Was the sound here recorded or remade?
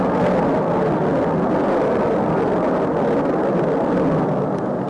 recorded